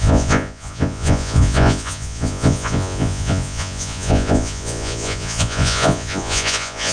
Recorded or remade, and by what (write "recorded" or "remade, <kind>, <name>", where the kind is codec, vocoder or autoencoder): remade, vocoder, Vocos